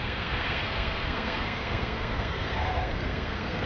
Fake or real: fake